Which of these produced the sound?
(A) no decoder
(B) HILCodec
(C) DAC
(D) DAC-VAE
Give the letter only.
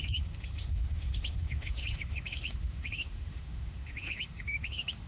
D